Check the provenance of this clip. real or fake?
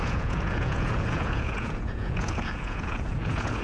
fake